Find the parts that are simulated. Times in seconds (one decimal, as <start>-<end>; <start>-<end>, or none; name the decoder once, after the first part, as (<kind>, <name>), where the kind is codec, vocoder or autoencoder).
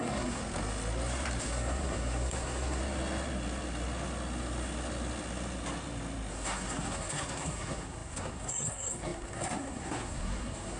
0.0-0.4 (codec, SNAC); 1.4-2.8; 6.3-10.8